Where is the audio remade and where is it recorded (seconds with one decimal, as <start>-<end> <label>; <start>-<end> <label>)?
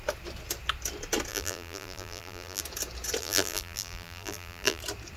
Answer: 0.0-1.3 recorded; 1.3-2.6 remade; 2.6-3.2 recorded; 3.2-4.8 remade; 4.8-5.2 recorded